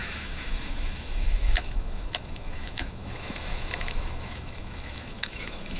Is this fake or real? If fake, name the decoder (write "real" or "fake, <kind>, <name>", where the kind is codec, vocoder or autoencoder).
fake, autoencoder, DAC-VAE